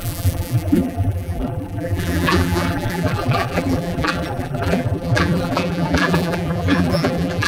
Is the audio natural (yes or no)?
no